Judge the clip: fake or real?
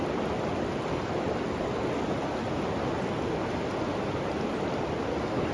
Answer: real